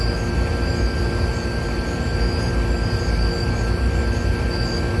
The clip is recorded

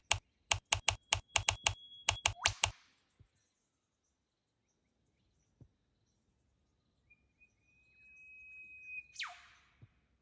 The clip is recorded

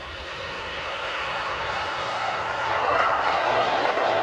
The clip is remade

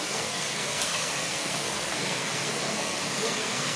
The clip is remade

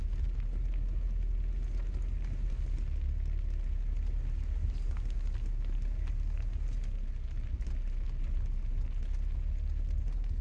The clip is recorded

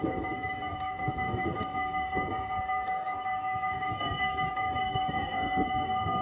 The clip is remade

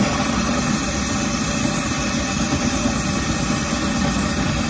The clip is recorded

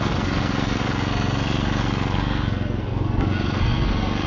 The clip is remade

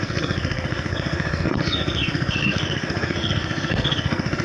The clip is remade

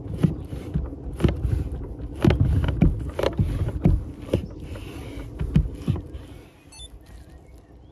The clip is recorded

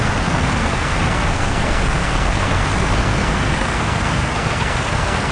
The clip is remade